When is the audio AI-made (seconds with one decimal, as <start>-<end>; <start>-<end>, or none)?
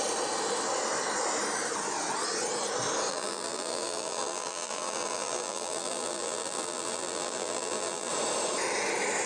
3.1-8.1